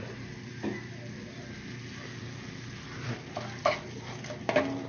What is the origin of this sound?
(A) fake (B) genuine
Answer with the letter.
B